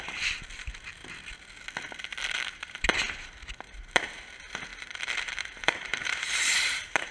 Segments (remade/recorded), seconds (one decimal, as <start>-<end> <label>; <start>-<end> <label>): 0.0-1.0 remade; 1.0-2.0 recorded; 2.0-7.1 remade